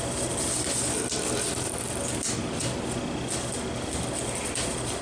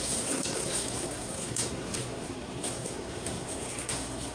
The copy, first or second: second